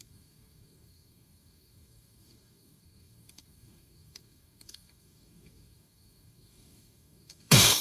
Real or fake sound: fake